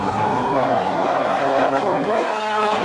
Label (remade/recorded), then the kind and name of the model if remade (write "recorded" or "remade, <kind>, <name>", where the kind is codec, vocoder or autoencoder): remade, codec, SNAC